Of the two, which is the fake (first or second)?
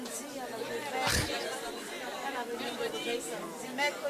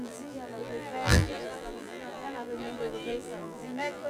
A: second